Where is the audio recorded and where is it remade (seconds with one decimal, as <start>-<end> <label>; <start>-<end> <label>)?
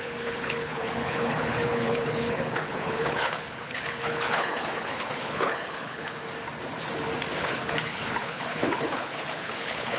0.0-6.2 remade; 6.2-7.4 recorded; 7.4-10.0 remade